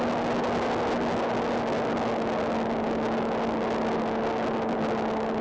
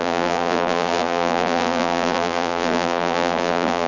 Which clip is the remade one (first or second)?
second